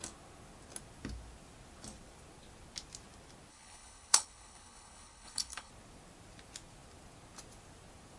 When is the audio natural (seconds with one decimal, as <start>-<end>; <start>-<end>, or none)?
0.0-3.5; 5.7-8.2